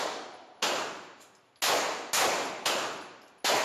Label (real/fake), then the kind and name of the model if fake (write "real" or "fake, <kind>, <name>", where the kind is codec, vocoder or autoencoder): real